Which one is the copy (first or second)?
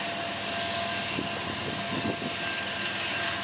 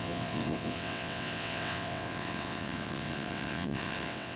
second